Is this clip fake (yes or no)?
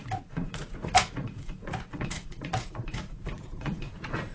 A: yes